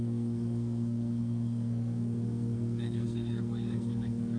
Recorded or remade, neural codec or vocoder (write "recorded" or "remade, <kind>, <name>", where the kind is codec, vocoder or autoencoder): remade, codec, SNAC